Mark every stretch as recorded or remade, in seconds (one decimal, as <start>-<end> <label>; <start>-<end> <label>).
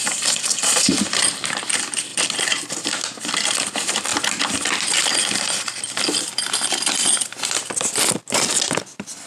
0.0-9.3 recorded